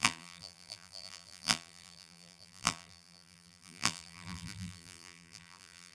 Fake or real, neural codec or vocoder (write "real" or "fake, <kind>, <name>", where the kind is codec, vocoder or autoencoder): fake, vocoder, BigVGAN v2